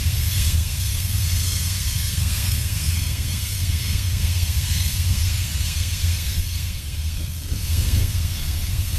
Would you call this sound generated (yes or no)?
yes